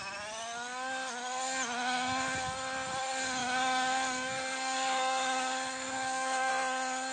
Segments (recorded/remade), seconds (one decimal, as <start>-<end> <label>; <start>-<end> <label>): 0.0-3.4 recorded; 3.4-6.5 remade; 6.5-7.1 recorded